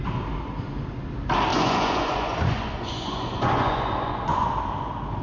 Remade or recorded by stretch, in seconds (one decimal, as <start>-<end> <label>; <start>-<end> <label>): 0.0-1.5 recorded; 1.5-4.5 remade; 4.5-5.2 recorded